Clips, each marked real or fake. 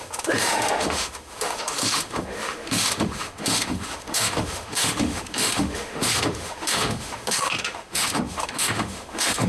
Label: fake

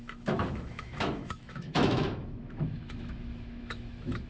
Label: fake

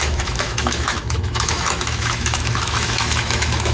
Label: fake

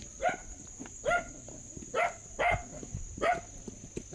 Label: real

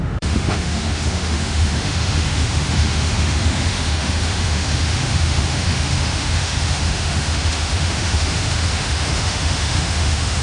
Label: fake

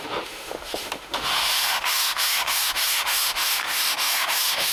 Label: fake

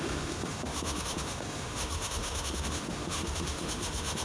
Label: fake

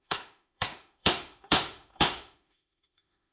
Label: fake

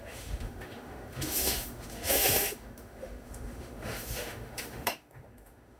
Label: fake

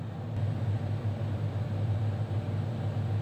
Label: real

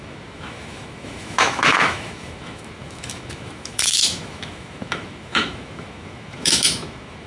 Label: fake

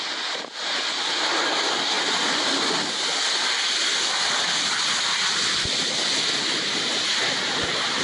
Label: real